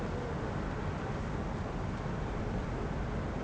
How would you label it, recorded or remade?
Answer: recorded